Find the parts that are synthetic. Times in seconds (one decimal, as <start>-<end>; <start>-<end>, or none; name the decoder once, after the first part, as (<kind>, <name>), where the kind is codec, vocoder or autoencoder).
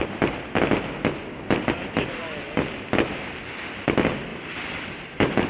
4.3-5.5 (vocoder, BigVGAN v2)